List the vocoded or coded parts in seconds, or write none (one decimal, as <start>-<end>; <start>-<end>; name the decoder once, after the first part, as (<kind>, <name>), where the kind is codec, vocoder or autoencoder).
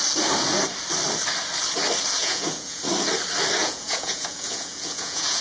2.2-2.8 (vocoder, Vocos); 3.6-5.4